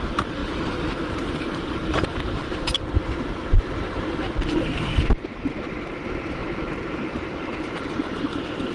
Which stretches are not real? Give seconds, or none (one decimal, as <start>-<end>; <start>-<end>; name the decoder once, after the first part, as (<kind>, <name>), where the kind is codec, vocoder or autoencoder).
0.0-8.7 (vocoder, BigVGAN v2)

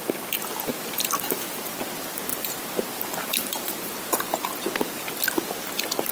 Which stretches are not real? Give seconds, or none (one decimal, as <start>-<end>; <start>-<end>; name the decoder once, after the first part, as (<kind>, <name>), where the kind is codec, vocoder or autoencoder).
0.7-1.8 (vocoder, BigVGAN v2); 2.3-4.3

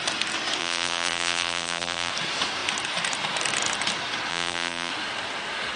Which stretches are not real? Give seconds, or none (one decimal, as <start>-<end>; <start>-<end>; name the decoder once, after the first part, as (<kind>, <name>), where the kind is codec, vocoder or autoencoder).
0.6-2.1 (vocoder, BigVGAN v2); 4.3-4.9

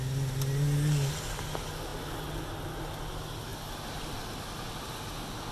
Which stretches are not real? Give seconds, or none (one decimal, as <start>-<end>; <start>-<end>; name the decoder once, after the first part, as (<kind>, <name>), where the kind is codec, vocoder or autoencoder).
none

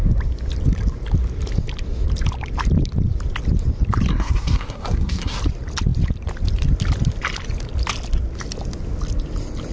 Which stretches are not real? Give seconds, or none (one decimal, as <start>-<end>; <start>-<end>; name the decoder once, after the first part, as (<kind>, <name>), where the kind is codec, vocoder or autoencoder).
4.1-5.4 (codec, SNAC)